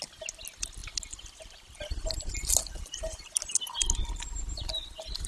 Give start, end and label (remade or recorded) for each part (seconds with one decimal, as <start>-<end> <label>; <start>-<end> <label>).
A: 0.0-5.3 recorded